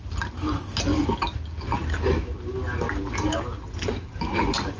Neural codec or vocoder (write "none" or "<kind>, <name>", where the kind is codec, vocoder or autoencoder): none